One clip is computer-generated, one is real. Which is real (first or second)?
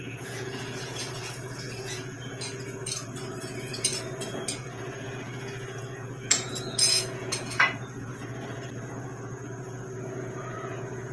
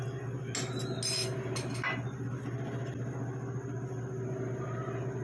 second